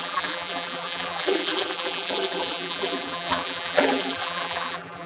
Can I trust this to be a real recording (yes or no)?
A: no